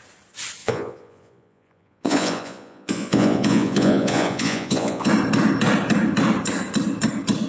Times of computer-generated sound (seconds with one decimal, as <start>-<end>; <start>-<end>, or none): 0.6-5.1